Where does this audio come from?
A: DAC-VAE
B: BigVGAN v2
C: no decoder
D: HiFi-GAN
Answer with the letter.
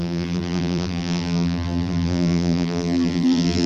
B